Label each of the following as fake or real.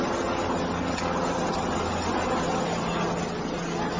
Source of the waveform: real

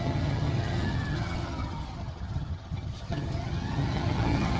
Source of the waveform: fake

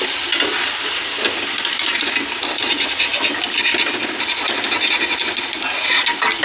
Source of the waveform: real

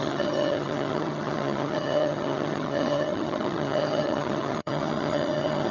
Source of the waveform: fake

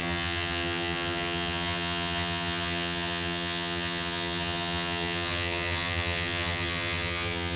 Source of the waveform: fake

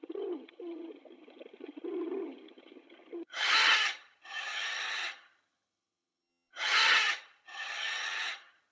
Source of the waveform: fake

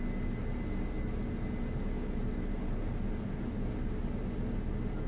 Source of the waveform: real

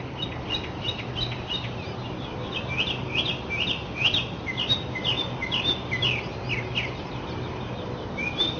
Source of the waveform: real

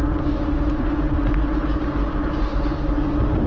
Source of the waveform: real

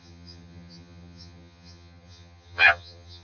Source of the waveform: fake